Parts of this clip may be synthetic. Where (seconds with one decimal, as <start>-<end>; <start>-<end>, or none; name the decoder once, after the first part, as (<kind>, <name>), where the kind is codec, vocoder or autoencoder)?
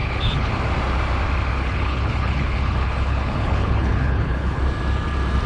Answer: 0.0-0.5 (codec, HILCodec); 1.5-4.6